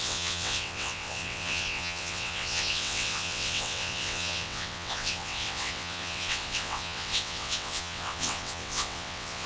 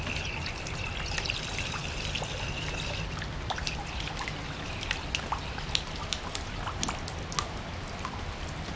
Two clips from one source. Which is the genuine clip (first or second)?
second